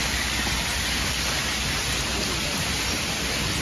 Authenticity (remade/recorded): recorded